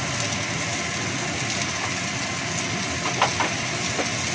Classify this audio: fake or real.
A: real